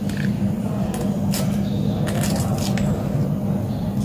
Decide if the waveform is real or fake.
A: real